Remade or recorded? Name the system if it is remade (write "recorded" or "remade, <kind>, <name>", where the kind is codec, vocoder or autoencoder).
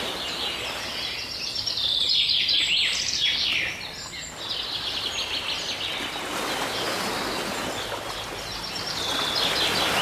recorded